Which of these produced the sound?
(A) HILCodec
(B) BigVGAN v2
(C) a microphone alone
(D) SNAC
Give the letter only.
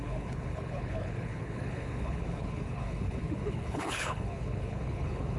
A